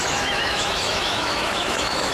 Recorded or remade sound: remade